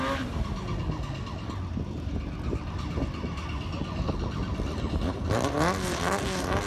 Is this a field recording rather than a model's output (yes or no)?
yes